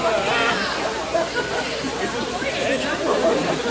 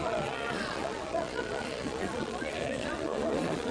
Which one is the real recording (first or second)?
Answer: first